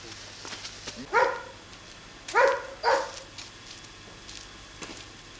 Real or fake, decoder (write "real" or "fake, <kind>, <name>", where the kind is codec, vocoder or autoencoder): real